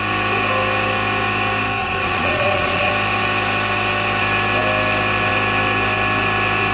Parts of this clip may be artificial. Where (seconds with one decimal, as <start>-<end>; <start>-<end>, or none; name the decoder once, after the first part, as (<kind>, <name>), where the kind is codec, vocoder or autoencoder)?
1.8-2.9 (vocoder, Vocos)